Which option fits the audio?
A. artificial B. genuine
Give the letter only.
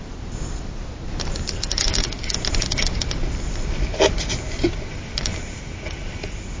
B